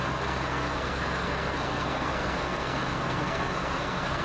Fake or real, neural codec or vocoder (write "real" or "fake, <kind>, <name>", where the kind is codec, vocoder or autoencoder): fake, codec, SNAC